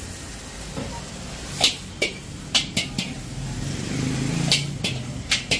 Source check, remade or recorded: recorded